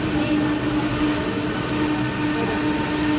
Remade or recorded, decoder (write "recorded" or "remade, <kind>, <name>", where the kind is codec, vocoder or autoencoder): recorded